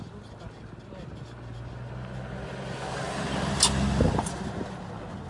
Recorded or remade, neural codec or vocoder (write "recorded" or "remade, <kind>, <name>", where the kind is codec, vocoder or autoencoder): recorded